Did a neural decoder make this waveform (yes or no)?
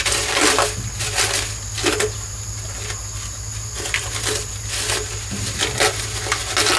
no